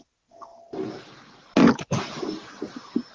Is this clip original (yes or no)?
yes